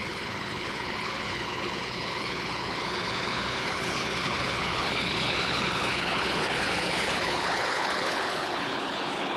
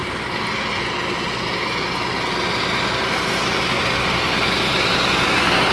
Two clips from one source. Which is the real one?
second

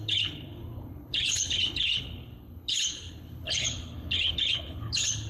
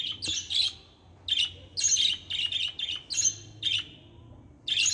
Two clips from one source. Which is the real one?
second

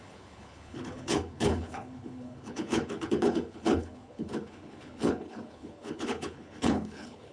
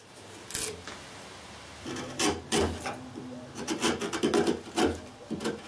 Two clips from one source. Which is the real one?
second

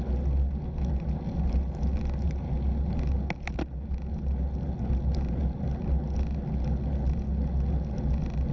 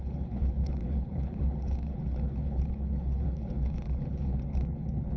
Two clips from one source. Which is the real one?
first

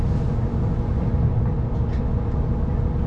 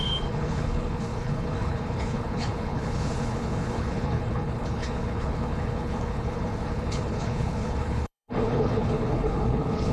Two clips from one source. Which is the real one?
first